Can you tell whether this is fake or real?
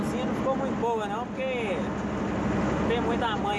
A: real